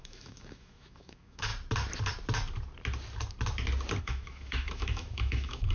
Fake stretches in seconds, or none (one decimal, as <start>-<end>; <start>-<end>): 0.0-1.5; 4.0-5.7

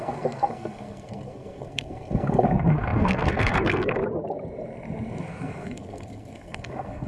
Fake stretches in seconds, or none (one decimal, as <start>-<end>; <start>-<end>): 0.0-4.0; 5.2-7.1

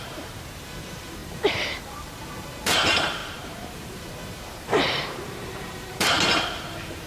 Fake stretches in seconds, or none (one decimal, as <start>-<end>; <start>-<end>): 0.0-7.1

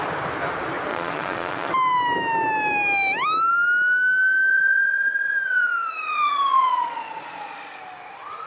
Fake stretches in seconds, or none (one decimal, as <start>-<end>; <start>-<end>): 0.9-1.7; 4.5-7.8